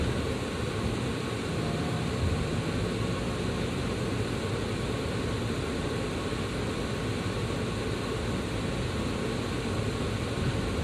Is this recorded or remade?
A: recorded